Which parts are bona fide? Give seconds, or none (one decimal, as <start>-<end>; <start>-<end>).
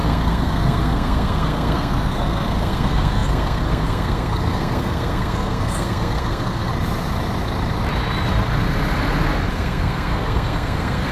6.7-9.5